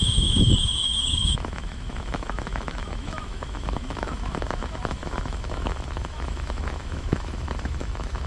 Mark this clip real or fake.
fake